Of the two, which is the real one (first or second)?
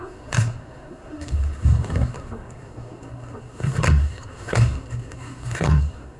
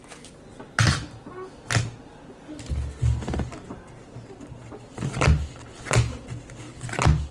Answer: second